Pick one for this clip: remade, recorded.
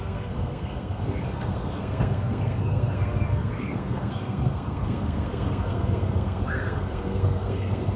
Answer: remade